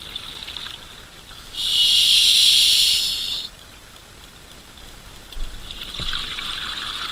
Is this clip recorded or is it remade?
recorded